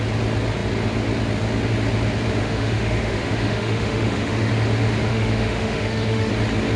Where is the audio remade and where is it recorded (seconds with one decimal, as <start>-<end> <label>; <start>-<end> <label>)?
0.0-2.4 recorded; 2.4-4.5 remade; 4.5-5.1 recorded; 5.1-6.3 remade; 6.3-6.8 recorded